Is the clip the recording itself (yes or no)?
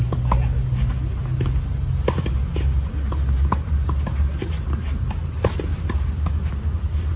yes